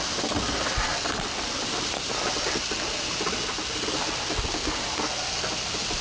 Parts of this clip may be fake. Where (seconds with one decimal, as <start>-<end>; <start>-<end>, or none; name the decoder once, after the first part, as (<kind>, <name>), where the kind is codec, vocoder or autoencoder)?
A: none